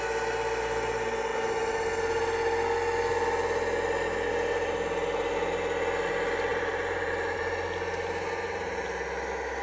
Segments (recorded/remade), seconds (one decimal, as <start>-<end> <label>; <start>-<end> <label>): 0.0-6.5 recorded; 6.5-7.4 remade; 7.4-9.6 recorded